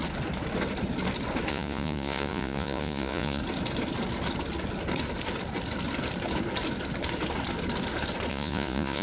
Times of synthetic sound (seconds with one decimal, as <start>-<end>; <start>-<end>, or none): 1.5-3.4; 8.3-9.0